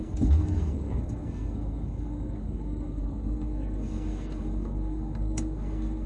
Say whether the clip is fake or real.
fake